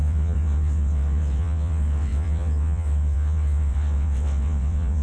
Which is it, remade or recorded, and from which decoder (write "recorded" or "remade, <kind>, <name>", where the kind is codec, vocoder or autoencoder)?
remade, vocoder, WaveNeXt